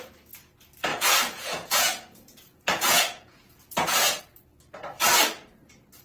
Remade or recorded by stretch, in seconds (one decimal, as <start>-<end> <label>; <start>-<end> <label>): 0.0-0.9 recorded; 0.9-4.2 remade; 4.2-6.0 recorded

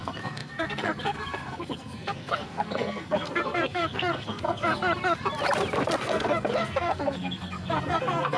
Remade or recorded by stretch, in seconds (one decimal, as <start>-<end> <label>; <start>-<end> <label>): 0.0-4.8 remade; 4.8-6.0 recorded; 6.0-8.4 remade

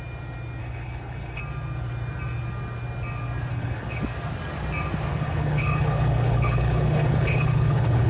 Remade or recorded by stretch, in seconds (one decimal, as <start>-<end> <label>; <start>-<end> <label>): 0.0-0.6 recorded; 0.6-1.4 remade; 1.4-3.5 recorded; 3.5-4.0 remade; 4.0-5.1 recorded; 5.1-8.1 remade

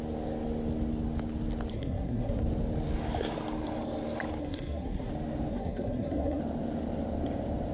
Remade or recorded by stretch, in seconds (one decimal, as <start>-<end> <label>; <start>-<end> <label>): 0.0-1.7 recorded; 1.7-2.4 remade; 2.4-4.4 recorded; 4.4-5.1 remade; 5.1-5.5 recorded; 5.5-6.4 remade; 6.4-7.7 recorded

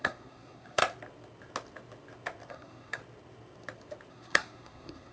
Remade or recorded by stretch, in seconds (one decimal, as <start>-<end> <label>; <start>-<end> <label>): 0.0-0.8 remade; 0.8-2.5 recorded; 2.5-3.0 remade; 3.0-4.1 recorded; 4.1-5.1 remade

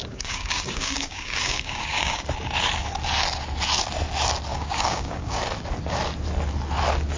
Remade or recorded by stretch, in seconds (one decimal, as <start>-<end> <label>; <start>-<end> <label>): 0.0-2.2 remade; 2.2-4.5 recorded; 4.5-5.4 remade; 5.4-7.2 recorded